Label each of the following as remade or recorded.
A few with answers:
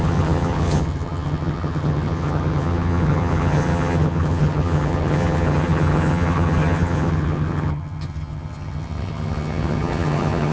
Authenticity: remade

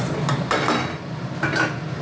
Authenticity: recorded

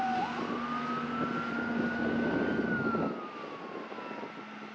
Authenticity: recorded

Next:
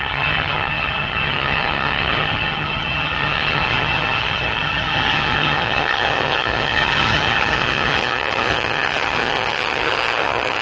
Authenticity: remade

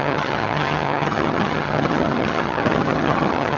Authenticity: remade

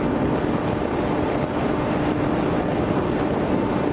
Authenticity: recorded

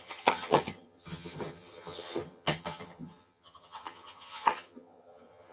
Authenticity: remade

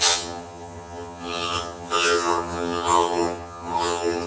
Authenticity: remade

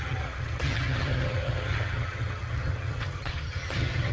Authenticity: remade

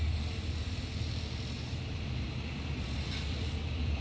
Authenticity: recorded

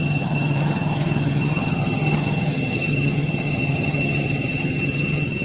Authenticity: remade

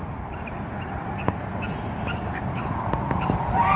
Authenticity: recorded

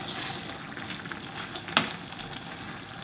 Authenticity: recorded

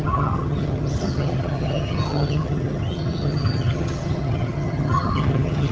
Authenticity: remade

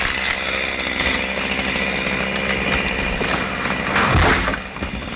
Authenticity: recorded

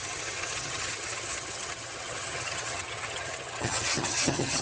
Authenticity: remade